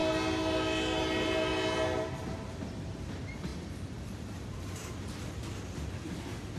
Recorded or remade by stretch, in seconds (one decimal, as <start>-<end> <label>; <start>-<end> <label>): 0.0-3.5 recorded; 3.5-4.9 remade; 4.9-6.6 recorded